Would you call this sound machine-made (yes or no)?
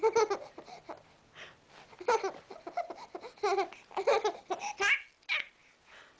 no